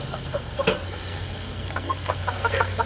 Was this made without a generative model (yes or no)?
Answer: no